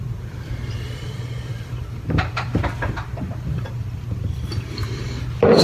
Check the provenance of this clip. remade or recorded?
remade